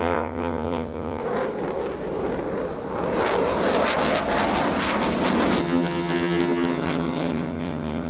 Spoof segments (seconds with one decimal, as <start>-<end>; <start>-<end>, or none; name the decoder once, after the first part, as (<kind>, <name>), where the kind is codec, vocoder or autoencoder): 0.0-1.2 (vocoder, HiFi-GAN); 5.6-8.1